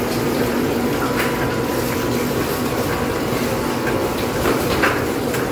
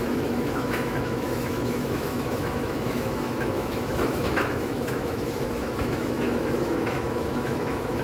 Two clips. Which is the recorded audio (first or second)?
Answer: first